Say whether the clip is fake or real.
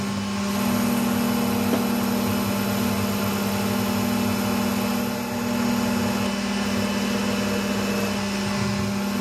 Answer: real